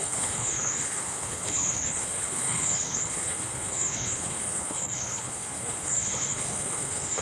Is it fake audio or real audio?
fake